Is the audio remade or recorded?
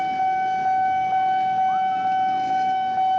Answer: recorded